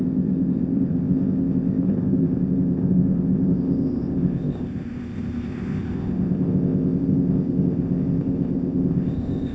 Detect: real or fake fake